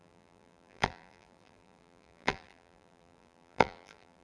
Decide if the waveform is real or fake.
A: fake